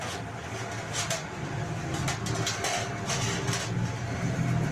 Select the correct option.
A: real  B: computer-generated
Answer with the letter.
A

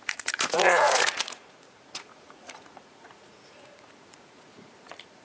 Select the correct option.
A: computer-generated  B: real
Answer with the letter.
A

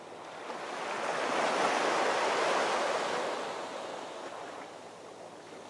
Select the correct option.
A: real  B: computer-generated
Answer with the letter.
A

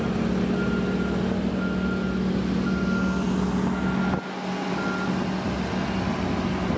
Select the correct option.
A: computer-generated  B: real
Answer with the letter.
B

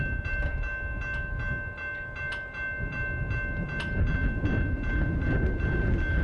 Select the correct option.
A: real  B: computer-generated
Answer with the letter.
A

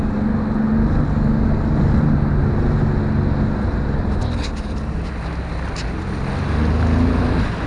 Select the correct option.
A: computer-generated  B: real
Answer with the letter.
B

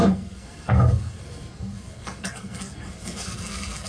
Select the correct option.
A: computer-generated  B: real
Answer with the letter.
A